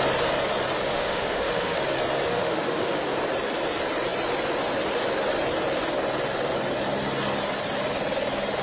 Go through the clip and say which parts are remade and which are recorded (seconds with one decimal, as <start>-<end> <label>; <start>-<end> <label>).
0.0-0.9 recorded; 0.9-1.8 remade; 1.8-2.3 recorded; 2.3-3.0 remade; 3.0-8.6 recorded